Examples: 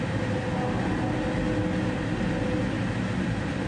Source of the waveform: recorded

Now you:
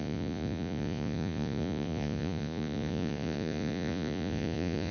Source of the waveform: remade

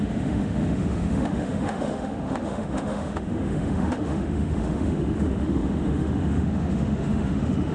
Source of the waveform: remade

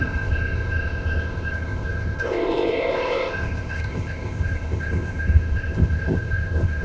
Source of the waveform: remade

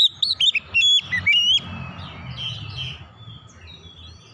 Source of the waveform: recorded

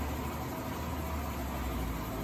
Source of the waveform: recorded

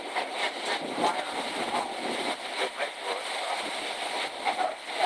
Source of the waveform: recorded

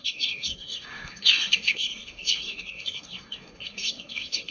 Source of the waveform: remade